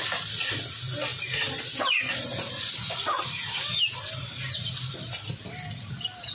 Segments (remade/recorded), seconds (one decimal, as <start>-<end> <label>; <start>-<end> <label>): 0.0-6.3 recorded